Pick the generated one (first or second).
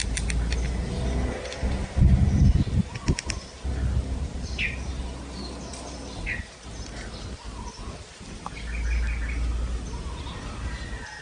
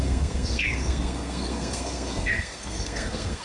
second